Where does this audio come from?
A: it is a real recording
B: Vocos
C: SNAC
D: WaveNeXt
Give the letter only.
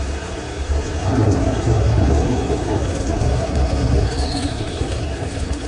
C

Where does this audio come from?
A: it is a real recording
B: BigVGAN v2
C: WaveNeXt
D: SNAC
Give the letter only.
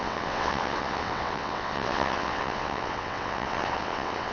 C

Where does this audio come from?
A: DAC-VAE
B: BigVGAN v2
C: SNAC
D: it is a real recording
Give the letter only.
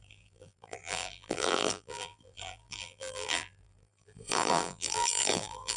B